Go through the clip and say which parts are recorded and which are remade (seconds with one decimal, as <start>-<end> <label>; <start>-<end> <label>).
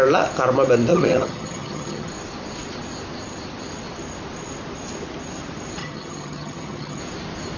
0.0-0.9 recorded; 0.9-2.1 remade; 2.1-5.8 recorded; 5.8-7.0 remade; 7.0-7.6 recorded